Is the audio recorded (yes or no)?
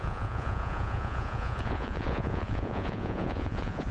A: no